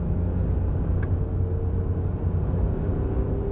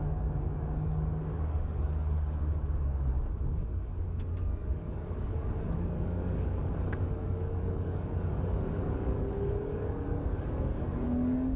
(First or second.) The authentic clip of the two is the first